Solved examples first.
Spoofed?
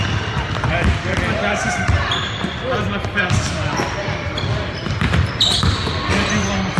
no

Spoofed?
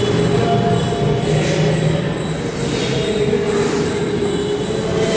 no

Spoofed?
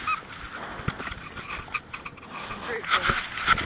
no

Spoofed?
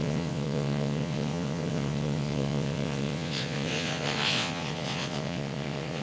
yes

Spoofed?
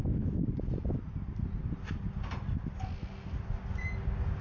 no